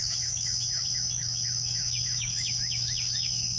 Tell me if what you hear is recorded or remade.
remade